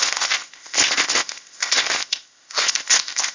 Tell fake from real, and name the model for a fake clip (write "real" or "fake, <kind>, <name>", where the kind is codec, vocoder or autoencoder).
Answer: fake, codec, ZipCodec